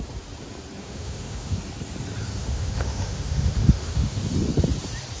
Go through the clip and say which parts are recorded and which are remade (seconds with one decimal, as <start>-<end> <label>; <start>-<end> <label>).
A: 0.0-0.8 recorded; 0.8-1.6 remade; 1.6-2.4 recorded; 2.4-4.2 remade; 4.2-5.2 recorded